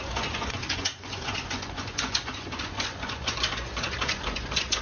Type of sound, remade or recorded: remade